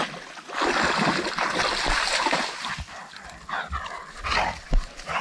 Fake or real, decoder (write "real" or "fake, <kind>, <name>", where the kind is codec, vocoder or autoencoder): real